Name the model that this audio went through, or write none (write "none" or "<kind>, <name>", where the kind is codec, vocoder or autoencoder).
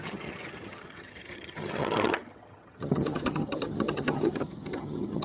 vocoder, HiFi-GAN